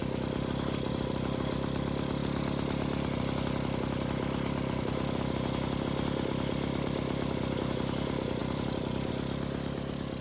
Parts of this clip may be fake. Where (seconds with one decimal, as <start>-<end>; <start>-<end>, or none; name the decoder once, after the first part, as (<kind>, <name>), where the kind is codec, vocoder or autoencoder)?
8.4-9.1 (vocoder, BigVGAN v2)